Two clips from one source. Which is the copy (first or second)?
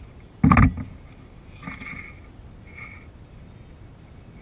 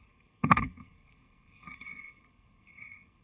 second